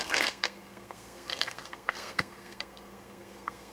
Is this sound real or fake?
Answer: fake